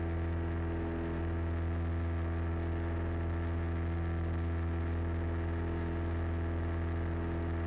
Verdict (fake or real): real